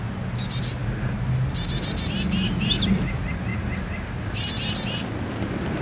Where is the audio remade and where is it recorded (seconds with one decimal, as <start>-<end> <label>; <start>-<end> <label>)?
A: 0.0-5.8 recorded